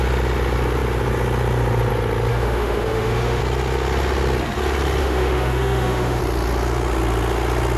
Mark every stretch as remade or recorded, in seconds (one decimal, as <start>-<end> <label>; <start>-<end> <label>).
0.0-2.3 recorded; 2.3-3.4 remade; 3.4-5.0 recorded; 5.0-6.2 remade; 6.2-7.8 recorded